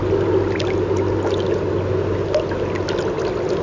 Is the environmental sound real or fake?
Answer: real